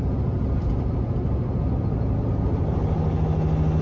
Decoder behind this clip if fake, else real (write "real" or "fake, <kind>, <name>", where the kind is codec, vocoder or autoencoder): real